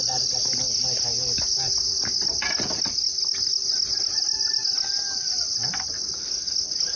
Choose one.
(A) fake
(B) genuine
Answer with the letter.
B